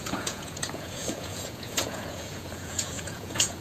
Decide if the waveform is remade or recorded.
remade